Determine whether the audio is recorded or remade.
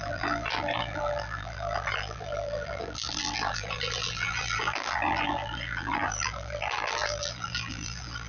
remade